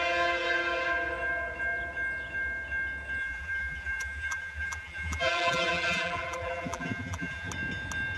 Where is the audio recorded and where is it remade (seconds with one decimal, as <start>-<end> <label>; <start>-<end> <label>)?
0.0-3.2 recorded; 3.2-7.5 remade; 7.5-8.2 recorded